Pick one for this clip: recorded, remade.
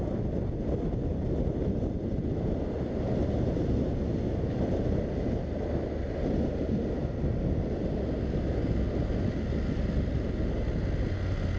recorded